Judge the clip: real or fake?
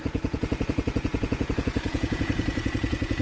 fake